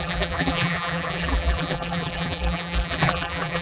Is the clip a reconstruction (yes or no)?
yes